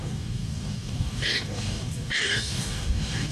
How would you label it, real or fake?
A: fake